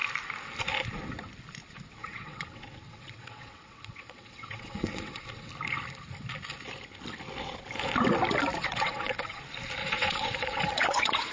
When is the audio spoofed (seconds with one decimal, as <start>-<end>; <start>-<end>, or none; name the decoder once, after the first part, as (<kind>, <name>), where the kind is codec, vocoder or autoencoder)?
2.0-5.5 (vocoder, WaveNeXt); 8.6-9.4; 9.8-11.3